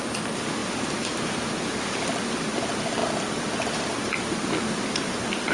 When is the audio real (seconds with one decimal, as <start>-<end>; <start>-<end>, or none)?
0.0-5.5